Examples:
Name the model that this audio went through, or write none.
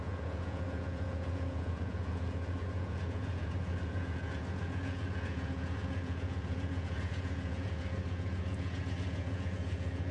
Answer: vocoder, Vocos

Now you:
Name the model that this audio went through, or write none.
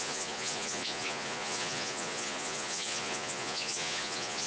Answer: vocoder, Vocos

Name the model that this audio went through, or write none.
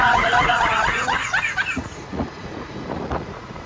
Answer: vocoder, Vocos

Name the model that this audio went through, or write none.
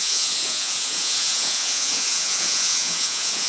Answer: vocoder, Vocos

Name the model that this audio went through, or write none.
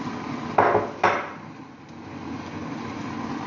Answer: none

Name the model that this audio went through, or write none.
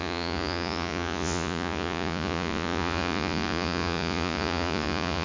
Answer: vocoder, Vocos